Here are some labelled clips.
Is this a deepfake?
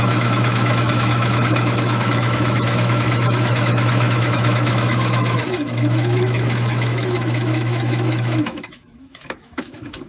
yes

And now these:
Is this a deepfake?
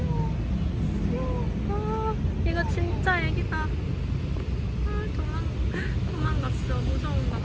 no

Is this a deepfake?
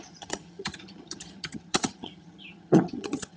yes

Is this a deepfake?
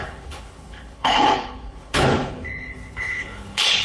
yes